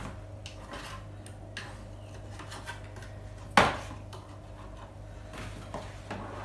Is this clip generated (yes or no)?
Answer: no